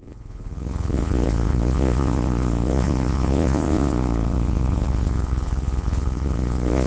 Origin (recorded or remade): remade